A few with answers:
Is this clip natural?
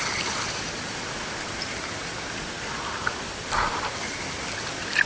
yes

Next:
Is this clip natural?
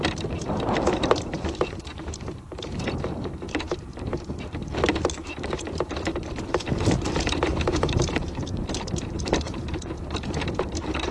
no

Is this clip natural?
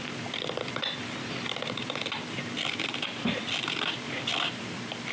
no